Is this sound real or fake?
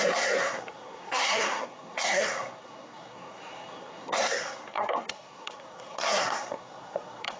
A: fake